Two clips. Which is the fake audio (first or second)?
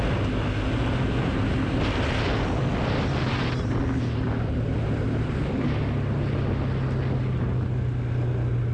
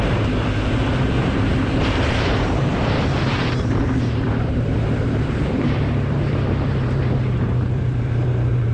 second